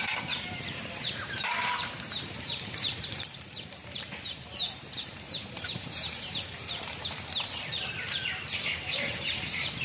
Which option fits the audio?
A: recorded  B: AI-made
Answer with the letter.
B